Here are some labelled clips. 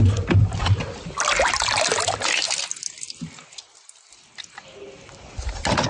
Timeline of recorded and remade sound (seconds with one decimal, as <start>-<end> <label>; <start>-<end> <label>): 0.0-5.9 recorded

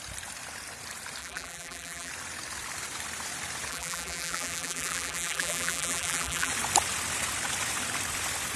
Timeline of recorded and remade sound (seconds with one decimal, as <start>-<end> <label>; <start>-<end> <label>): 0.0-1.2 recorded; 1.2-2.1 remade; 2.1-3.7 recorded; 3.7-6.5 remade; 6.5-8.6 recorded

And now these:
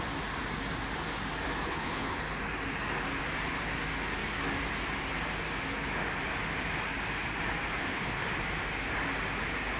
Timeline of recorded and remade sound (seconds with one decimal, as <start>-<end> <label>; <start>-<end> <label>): 0.0-1.7 recorded; 1.7-2.2 remade; 2.2-7.8 recorded; 7.8-8.3 remade; 8.3-9.8 recorded